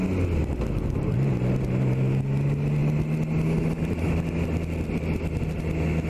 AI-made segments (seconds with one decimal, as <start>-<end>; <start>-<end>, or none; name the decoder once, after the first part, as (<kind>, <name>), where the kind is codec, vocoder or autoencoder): none